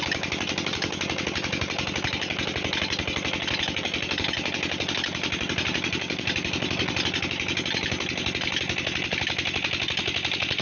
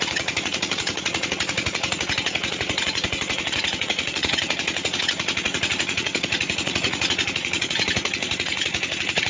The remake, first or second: second